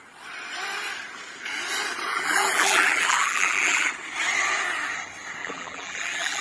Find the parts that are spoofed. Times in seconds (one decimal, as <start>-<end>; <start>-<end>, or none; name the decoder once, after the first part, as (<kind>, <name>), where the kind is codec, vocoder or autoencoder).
2.1-3.9 (vocoder, BigVGAN v2); 5.4-6.4